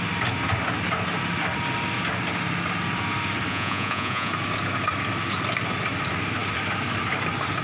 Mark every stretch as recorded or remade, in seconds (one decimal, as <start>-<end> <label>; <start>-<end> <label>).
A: 0.0-3.5 recorded; 3.5-4.3 remade; 4.3-7.6 recorded